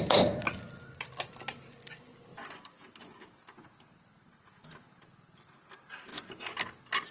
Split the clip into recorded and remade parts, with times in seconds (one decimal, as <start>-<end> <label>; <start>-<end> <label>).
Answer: 0.0-6.1 recorded; 6.1-7.1 remade